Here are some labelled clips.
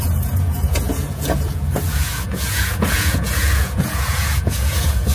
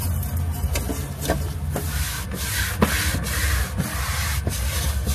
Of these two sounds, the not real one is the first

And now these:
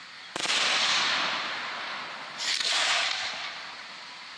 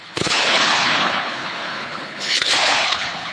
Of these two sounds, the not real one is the second